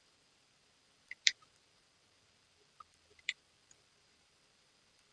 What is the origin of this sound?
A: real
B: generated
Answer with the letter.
B